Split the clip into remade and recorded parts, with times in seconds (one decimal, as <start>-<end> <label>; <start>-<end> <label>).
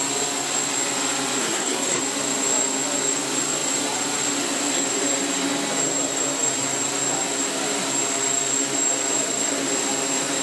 0.0-1.4 recorded; 1.4-2.0 remade; 2.0-10.4 recorded